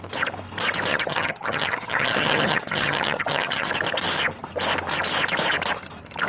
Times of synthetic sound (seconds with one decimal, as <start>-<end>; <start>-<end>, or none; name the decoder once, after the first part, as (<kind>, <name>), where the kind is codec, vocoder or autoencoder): 0.9-3.7 (vocoder, HiFi-GAN)